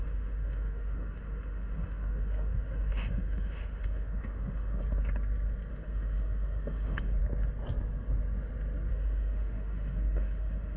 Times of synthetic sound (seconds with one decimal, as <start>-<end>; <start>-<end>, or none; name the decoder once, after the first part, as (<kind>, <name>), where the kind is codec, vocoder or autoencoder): 0.0-4.8 (autoencoder, DAC-VAE); 5.7-7.2; 8.9-10.8